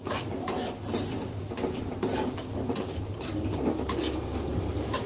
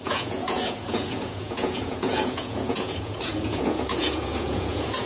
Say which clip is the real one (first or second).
first